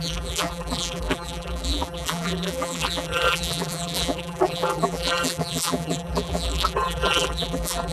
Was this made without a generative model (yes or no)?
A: no